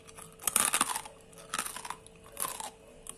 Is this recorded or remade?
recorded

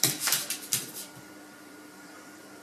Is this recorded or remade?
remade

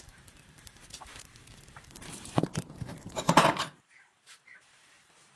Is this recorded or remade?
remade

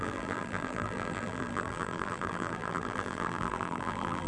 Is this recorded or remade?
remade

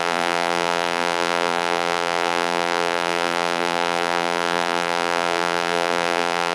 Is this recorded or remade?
remade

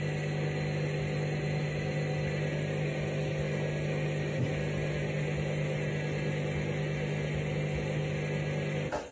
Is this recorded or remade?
recorded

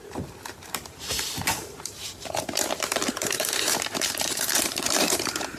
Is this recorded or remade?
remade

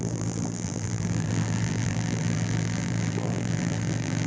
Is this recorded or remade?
remade